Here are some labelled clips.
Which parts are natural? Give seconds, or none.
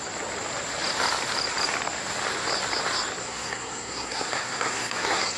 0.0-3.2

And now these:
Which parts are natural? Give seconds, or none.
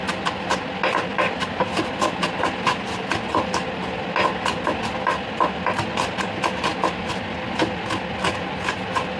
0.0-1.1; 1.9-9.2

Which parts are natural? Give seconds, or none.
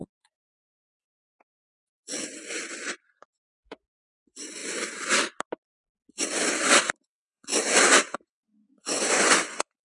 2.0-2.9; 4.6-7.0; 7.5-8.1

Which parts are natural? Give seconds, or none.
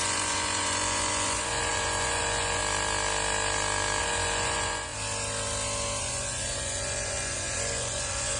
2.6-4.0; 4.9-6.0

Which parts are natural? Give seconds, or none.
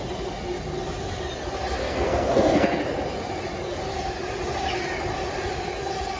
0.0-1.8; 2.8-6.2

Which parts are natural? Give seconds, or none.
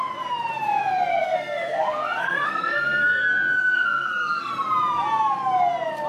0.0-1.1; 4.5-6.1